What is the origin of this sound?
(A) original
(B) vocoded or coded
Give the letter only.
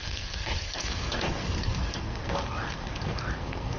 B